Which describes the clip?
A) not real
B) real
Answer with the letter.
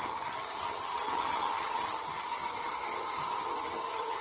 A